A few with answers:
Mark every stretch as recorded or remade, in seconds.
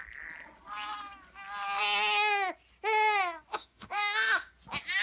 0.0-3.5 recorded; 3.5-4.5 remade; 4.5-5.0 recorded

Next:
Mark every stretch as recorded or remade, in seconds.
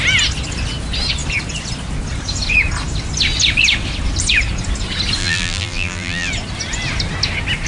0.0-5.2 recorded; 5.2-6.3 remade; 6.3-7.7 recorded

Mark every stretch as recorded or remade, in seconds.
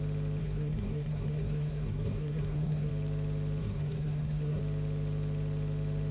0.0-0.4 recorded; 0.4-2.9 remade; 2.9-3.6 recorded; 3.6-4.6 remade; 4.6-6.1 recorded